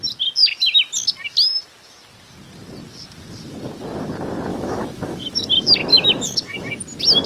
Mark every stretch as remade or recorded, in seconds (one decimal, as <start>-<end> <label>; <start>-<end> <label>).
0.0-4.5 recorded; 4.5-5.5 remade; 5.5-5.9 recorded; 5.9-6.8 remade; 6.8-7.3 recorded